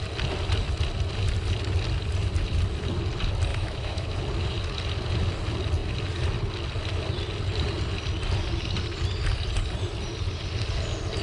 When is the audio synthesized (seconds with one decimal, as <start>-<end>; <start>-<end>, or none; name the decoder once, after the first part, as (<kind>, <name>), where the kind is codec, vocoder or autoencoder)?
3.5-4.2 (autoencoder, DAC-VAE)

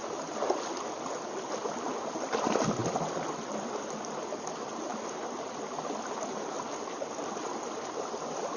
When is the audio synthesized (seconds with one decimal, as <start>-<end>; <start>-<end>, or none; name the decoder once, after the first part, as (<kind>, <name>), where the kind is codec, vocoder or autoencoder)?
none